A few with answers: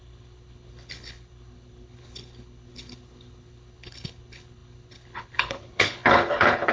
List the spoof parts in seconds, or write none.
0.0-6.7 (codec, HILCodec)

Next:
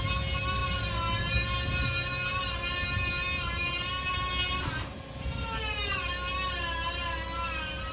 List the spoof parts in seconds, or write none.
none

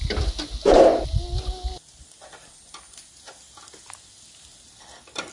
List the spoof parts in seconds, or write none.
none

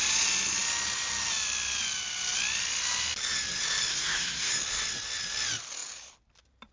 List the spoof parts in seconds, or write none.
3.9-4.5 (codec, SNAC)